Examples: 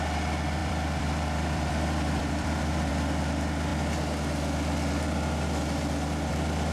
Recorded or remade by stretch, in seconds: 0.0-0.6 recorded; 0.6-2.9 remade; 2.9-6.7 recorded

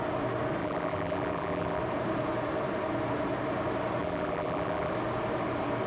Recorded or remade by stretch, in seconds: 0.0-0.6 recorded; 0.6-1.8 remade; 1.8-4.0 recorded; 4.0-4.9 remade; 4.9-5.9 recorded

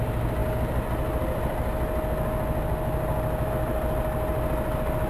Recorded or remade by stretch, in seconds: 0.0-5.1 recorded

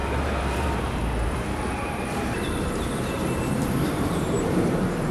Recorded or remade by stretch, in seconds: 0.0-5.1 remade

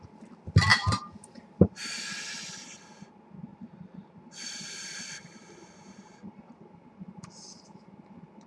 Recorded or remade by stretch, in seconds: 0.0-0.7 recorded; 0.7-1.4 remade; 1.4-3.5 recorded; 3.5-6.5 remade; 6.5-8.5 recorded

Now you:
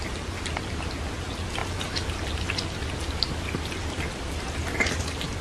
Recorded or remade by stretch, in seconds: 0.0-5.4 recorded

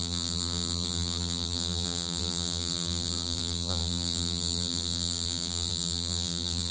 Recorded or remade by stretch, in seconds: 0.0-6.7 remade